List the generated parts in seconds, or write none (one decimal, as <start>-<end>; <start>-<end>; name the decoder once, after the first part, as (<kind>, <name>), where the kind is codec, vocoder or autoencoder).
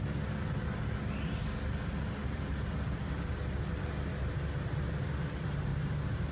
2.2-2.7 (vocoder, BigVGAN v2); 5.7-6.3